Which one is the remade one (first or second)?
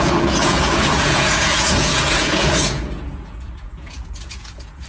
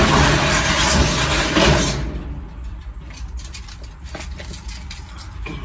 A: first